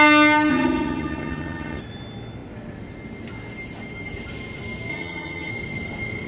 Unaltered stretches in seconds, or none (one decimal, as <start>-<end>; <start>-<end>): 0.0-0.5; 1.8-4.9; 5.5-6.3

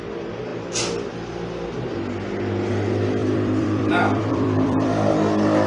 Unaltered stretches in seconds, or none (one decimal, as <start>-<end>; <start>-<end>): 0.0-3.2; 5.1-5.7

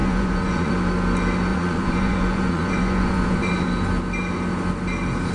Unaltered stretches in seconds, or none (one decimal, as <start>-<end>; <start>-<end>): 0.7-1.5; 3.5-5.3

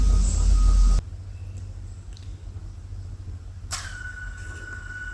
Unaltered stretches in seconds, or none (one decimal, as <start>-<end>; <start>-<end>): 0.0-2.6; 4.0-5.1